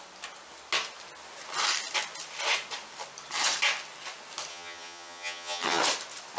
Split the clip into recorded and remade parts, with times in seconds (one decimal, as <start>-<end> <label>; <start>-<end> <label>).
0.0-4.5 recorded; 4.5-5.8 remade; 5.8-6.4 recorded